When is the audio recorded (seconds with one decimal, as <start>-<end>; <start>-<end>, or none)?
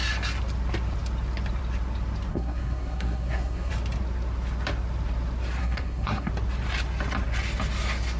0.0-2.3; 3.7-5.6; 6.3-8.2